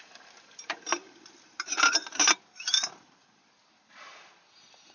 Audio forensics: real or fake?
real